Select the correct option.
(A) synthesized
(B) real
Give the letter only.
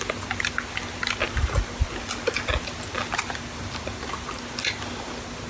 B